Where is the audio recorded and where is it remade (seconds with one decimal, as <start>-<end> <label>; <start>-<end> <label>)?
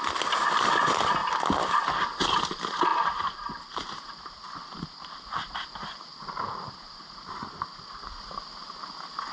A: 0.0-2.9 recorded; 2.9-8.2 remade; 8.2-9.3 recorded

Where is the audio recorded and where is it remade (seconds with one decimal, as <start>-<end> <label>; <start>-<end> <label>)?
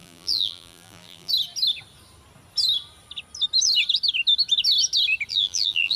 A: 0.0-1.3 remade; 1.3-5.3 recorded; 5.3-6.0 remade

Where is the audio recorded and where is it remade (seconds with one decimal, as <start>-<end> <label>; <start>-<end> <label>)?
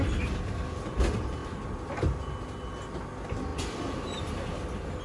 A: 0.0-3.5 recorded; 3.5-4.2 remade; 4.2-5.0 recorded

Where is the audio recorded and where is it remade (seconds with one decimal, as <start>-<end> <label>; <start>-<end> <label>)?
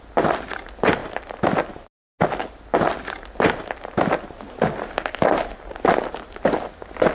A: 0.0-7.1 recorded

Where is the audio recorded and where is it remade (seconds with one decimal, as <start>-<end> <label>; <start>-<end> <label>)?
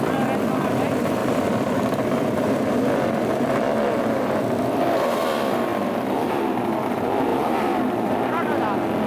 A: 0.0-1.2 recorded; 1.2-4.4 remade; 4.4-5.7 recorded; 5.7-6.3 remade; 6.3-7.3 recorded; 7.3-8.1 remade; 8.1-9.1 recorded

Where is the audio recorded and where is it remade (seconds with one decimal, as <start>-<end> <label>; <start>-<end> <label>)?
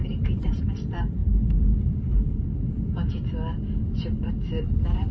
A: 0.0-1.2 remade; 1.2-4.3 recorded; 4.3-5.1 remade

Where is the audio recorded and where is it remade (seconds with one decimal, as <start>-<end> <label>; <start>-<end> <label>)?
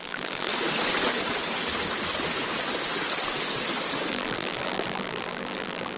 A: 0.0-0.5 remade; 0.5-4.1 recorded; 4.1-6.0 remade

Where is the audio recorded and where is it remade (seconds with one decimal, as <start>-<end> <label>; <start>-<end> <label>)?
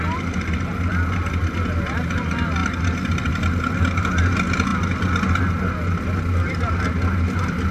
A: 0.0-7.7 recorded